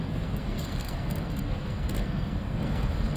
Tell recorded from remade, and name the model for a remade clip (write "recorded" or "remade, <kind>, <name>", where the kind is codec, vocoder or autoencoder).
remade, codec, SNAC